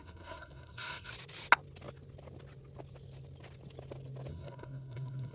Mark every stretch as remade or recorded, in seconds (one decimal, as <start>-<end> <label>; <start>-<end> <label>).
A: 0.0-1.1 remade; 1.1-4.3 recorded; 4.3-5.3 remade